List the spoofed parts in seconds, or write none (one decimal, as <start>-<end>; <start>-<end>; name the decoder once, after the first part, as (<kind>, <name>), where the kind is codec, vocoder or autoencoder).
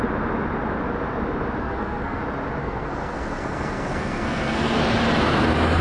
1.6-2.2 (codec, SNAC); 2.6-4.8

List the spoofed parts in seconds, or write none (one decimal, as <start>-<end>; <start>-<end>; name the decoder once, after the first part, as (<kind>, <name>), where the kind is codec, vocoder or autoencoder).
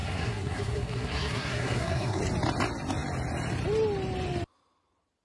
0.0-2.2 (codec, SNAC)